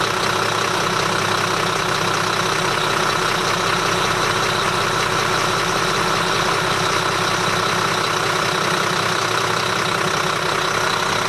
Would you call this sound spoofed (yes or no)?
no